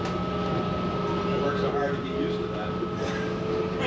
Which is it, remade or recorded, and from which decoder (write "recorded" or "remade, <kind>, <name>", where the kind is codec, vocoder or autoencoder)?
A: recorded